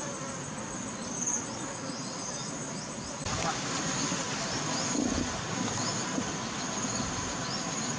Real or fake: real